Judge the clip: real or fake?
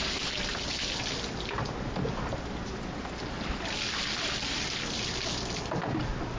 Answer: real